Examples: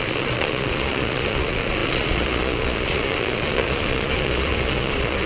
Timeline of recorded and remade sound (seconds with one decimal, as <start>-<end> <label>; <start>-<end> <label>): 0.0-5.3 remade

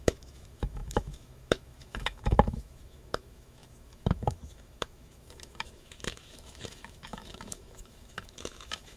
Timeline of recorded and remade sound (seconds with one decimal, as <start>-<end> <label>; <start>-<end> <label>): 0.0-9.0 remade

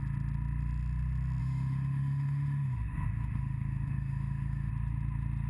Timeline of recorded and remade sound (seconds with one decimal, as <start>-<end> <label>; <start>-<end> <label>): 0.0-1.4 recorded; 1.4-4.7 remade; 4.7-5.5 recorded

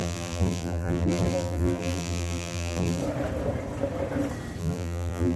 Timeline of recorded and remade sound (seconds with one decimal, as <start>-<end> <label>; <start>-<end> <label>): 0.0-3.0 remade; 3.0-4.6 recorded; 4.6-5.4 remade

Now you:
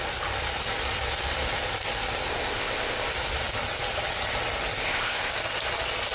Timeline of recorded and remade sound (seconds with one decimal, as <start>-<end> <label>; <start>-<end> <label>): 0.0-2.3 recorded; 2.3-3.1 remade; 3.1-4.8 recorded; 4.8-5.3 remade; 5.3-6.1 recorded